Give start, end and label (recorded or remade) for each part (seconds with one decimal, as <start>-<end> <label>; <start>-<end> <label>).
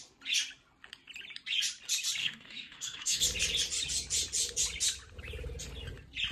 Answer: 0.0-2.2 recorded; 2.2-3.2 remade; 3.2-6.3 recorded